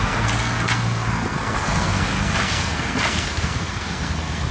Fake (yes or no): yes